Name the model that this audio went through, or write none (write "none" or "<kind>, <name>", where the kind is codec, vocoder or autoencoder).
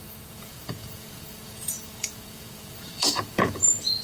vocoder, Vocos